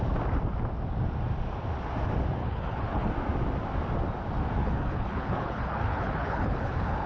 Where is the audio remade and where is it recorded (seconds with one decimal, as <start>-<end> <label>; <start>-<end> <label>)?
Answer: 0.0-2.4 recorded; 2.4-3.1 remade; 3.1-4.6 recorded; 4.6-7.1 remade